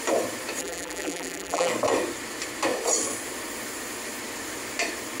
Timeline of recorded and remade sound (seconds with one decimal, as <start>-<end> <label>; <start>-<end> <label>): 0.0-0.6 recorded; 0.6-1.7 remade; 1.7-5.2 recorded